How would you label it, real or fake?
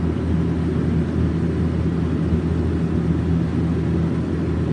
real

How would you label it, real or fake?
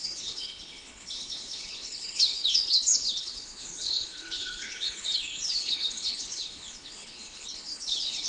fake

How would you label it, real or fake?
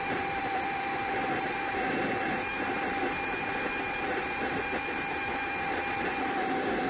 real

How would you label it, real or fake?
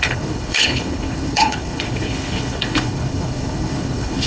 fake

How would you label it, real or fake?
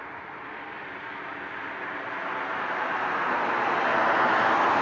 real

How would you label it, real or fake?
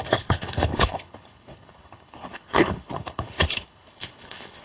fake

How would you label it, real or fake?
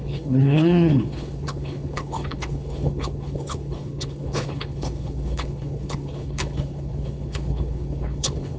fake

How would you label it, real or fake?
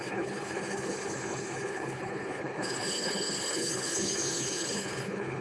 fake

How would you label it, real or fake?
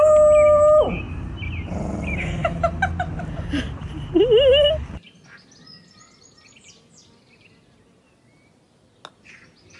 real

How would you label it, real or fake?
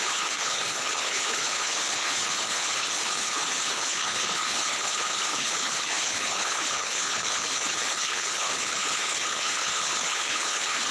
fake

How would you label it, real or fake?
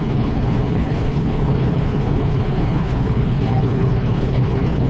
fake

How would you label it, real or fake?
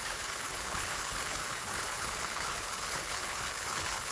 fake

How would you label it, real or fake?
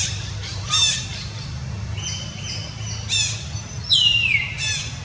real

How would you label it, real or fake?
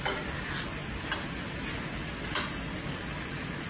real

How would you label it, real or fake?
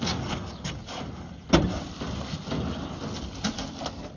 real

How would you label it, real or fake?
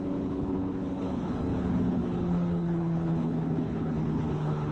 fake